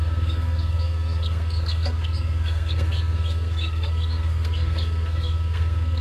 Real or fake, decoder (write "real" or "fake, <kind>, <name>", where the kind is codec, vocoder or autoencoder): fake, codec, SNAC